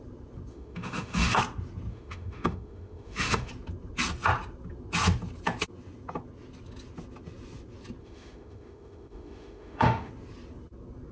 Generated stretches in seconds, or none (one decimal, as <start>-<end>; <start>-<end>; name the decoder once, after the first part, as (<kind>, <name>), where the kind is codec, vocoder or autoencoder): 0.5-1.4 (autoencoder, DAC-VAE); 1.9-3.5; 8.0-10.1